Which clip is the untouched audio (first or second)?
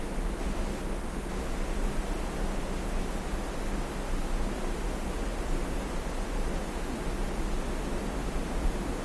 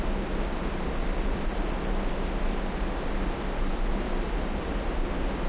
first